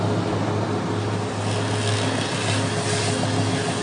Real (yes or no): yes